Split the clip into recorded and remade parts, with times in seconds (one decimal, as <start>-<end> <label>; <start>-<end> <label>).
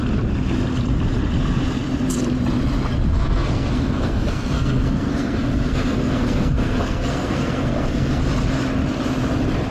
0.0-3.1 recorded; 3.1-8.2 remade; 8.2-9.7 recorded